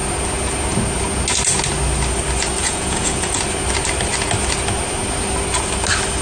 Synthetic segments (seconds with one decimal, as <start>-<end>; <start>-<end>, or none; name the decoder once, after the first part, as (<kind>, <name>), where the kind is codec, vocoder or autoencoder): 2.6-3.4 (vocoder, Vocos)

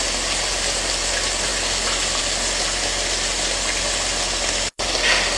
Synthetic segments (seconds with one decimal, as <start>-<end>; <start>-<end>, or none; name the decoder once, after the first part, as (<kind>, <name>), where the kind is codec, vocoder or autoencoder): none

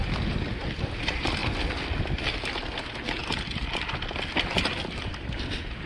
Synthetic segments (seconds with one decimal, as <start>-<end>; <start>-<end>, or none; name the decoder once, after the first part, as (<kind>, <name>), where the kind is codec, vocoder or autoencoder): none

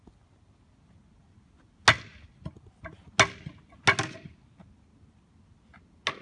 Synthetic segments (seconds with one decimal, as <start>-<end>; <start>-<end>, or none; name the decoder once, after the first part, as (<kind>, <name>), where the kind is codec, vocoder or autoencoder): none